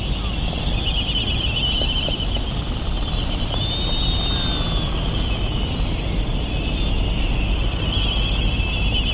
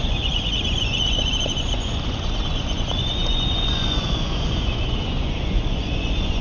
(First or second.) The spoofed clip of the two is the second